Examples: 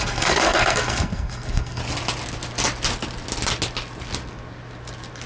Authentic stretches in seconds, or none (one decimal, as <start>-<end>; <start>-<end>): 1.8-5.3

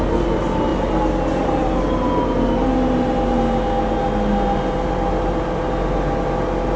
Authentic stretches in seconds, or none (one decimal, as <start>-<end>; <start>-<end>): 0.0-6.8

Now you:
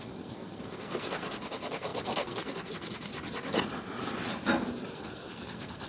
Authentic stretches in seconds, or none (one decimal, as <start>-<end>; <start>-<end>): 3.1-4.9